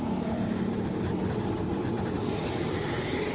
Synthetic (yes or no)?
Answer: yes